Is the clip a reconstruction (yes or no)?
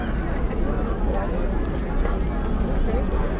no